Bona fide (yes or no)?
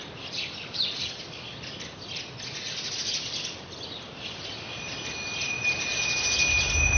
yes